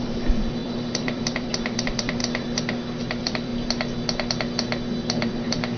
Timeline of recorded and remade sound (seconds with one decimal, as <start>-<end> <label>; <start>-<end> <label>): 0.0-2.2 remade; 2.2-3.0 recorded; 3.0-3.5 remade; 3.5-5.3 recorded; 5.3-5.8 remade